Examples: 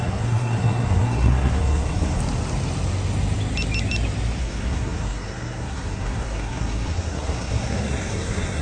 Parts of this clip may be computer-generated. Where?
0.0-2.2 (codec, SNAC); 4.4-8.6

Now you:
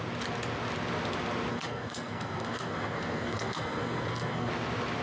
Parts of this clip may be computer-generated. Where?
1.5-4.5 (codec, SNAC)